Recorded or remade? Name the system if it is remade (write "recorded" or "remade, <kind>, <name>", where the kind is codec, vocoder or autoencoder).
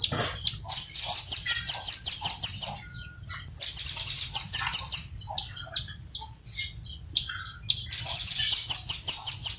recorded